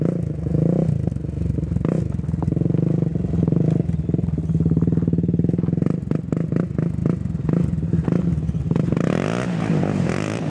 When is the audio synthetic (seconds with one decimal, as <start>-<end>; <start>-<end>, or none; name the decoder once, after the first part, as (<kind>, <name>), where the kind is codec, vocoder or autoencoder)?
none